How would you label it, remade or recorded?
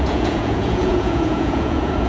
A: remade